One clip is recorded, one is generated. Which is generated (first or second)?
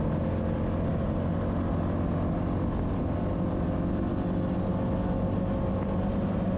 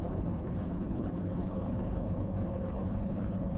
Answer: second